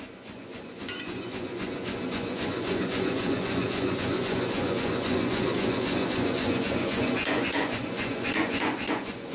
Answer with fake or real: fake